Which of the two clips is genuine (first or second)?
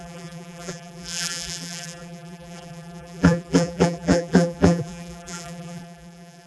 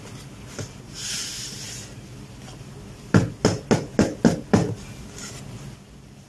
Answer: second